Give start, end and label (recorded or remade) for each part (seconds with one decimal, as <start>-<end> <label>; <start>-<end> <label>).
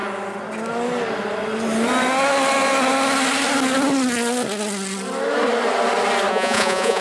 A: 0.0-6.3 recorded; 6.3-7.0 remade